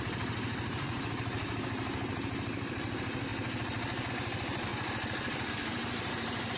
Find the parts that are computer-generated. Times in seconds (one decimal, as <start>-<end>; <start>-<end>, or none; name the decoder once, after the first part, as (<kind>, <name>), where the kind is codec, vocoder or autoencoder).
0.0-3.3 (vocoder, BigVGAN v2); 4.1-4.7; 5.5-6.6

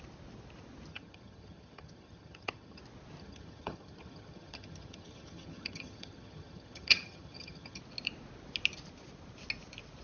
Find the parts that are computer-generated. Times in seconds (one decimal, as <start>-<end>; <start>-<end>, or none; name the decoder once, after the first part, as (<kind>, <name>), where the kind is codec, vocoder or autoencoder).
0.9-2.8 (vocoder, HiFi-GAN); 3.2-7.8

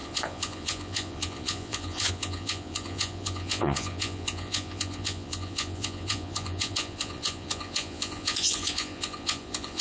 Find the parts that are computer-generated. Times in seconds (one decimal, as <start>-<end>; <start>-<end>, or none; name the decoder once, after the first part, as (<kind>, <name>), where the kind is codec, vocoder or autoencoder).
0.0-9.8 (vocoder, Vocos)

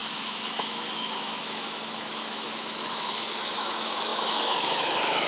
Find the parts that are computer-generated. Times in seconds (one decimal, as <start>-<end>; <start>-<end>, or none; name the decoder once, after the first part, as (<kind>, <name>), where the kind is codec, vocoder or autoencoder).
0.0-5.3 (autoencoder, DAC-VAE)

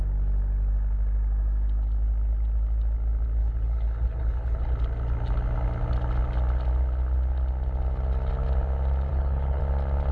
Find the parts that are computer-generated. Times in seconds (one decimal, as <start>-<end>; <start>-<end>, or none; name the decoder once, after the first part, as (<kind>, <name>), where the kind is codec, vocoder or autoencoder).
3.4-4.7 (codec, HILCodec); 9.1-9.6

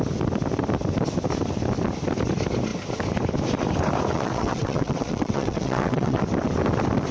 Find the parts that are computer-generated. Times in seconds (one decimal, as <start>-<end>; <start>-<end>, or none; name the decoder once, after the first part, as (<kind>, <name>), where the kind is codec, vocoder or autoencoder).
4.1-6.2 (vocoder, WaveNeXt)

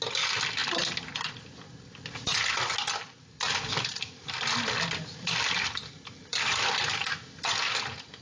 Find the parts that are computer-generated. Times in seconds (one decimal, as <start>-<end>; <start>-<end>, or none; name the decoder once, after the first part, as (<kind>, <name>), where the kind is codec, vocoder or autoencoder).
6.3-7.0 (vocoder, BigVGAN v2)